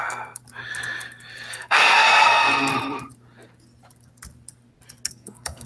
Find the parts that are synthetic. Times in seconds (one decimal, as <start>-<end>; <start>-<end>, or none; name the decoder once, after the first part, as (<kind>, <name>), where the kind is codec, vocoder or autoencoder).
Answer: 0.0-0.4 (codec, SNAC); 1.5-2.7; 5.1-5.7

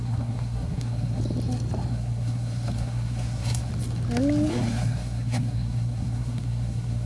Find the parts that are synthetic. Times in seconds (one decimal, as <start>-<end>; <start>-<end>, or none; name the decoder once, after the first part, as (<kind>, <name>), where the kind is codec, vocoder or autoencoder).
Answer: 0.0-1.2 (codec, SNAC); 1.9-3.7; 4.5-7.1

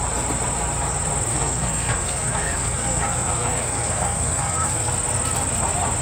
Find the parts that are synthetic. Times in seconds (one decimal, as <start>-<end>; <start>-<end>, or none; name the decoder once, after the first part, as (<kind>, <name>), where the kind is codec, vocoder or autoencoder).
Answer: 1.3-4.9 (codec, SNAC)

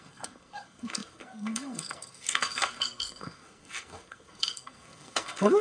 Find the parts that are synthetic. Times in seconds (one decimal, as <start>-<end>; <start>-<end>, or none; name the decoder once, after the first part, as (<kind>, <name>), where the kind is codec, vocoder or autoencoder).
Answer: 0.0-5.6 (codec, SNAC)

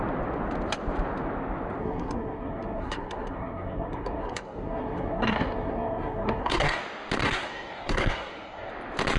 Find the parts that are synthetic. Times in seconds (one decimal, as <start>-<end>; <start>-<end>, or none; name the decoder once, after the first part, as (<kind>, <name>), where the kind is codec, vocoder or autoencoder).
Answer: 1.8-6.8 (codec, SNAC); 7.2-8.7

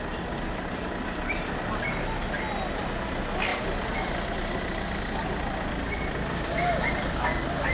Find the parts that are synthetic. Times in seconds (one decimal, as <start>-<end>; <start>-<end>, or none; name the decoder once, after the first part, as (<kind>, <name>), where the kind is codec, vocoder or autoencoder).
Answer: none